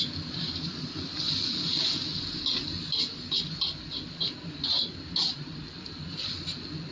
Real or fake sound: real